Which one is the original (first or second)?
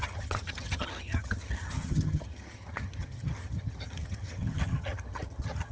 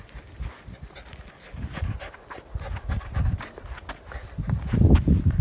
second